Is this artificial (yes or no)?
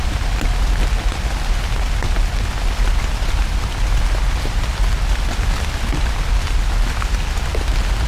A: no